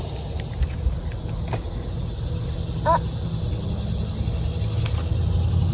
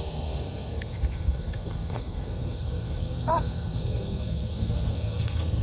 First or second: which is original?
first